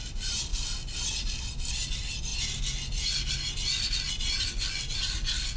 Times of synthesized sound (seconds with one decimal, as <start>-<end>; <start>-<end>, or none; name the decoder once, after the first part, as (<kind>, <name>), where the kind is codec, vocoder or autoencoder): none

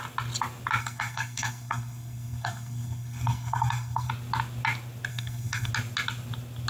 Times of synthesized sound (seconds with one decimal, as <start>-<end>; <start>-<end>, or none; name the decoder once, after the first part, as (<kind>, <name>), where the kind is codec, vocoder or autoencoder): 0.8-4.1 (codec, SNAC); 5.1-5.7

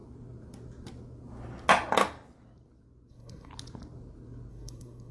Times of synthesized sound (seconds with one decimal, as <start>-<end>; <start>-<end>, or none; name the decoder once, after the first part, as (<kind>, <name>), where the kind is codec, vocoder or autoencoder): 3.1-3.5 (codec, SNAC); 4.5-5.1